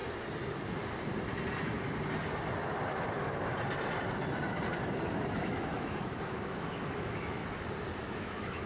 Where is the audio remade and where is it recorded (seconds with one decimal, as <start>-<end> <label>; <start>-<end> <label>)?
0.0-5.0 recorded; 5.0-7.4 remade; 7.4-8.0 recorded; 8.0-8.7 remade